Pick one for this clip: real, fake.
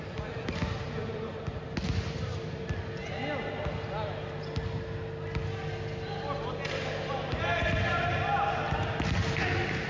real